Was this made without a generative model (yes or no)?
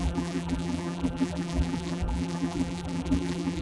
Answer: no